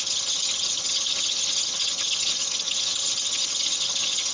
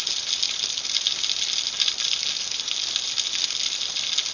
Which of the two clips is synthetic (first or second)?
first